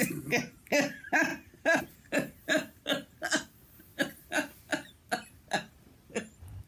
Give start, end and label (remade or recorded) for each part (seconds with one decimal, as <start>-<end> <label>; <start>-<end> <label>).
0.0-3.9 recorded; 3.9-4.6 remade; 4.6-6.7 recorded